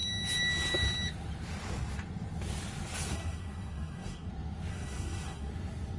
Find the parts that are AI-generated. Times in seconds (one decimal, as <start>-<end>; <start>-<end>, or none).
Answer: 3.1-4.3; 4.7-5.5